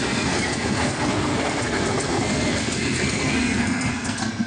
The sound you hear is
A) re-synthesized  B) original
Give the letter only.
A